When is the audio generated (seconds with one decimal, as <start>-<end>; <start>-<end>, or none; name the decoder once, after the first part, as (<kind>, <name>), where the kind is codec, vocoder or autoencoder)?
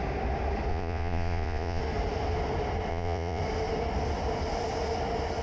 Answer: 0.7-1.8 (vocoder, Vocos); 2.9-3.4